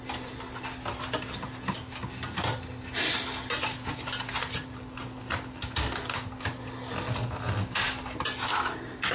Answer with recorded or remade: recorded